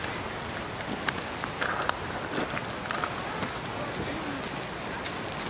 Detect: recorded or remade recorded